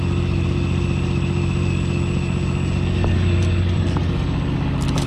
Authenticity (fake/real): real